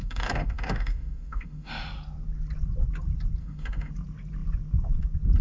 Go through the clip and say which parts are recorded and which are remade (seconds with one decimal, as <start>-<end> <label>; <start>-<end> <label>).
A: 0.0-1.7 remade; 1.7-3.4 recorded; 3.4-3.9 remade; 3.9-5.4 recorded